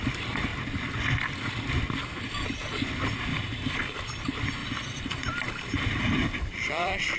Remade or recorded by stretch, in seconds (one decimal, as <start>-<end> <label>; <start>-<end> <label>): 0.0-3.3 recorded; 3.3-4.0 remade; 4.0-4.6 recorded; 4.6-7.2 remade